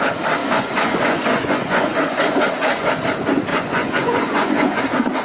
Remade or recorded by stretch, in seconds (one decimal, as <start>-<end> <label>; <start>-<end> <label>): 0.0-0.4 recorded; 0.4-2.9 remade; 2.9-3.5 recorded; 3.5-4.8 remade; 4.8-5.2 recorded